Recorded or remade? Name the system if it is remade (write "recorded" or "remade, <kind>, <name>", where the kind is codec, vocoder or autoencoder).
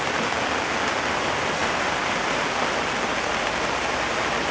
recorded